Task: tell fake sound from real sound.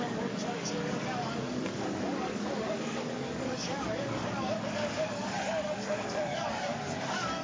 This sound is fake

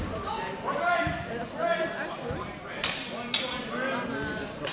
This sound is real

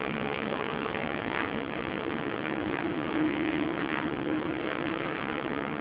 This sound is fake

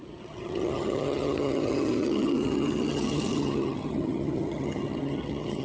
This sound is fake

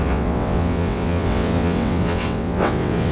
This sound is fake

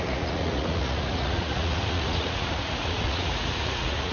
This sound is fake